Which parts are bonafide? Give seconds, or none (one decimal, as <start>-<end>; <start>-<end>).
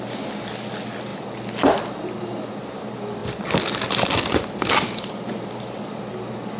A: 0.0-6.6